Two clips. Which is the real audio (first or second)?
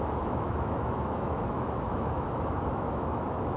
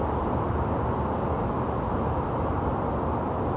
second